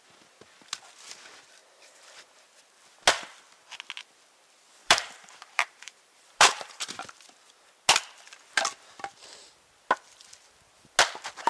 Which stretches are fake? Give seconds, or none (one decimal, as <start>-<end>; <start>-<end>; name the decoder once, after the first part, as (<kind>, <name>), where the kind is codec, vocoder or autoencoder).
4.8-7.0 (vocoder, BigVGAN v2)